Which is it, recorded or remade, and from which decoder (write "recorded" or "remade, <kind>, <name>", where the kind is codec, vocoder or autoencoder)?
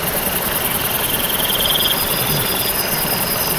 recorded